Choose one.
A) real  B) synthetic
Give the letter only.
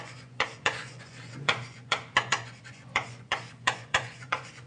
B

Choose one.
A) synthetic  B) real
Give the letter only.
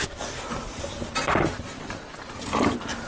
B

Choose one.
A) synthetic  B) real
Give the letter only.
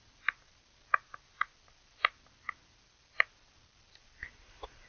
B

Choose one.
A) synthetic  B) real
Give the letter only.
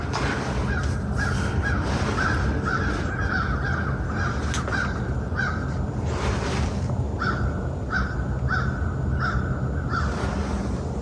B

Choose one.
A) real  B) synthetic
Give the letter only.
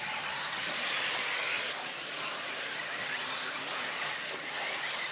A